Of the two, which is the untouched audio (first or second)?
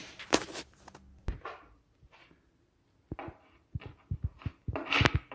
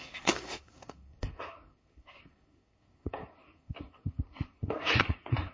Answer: first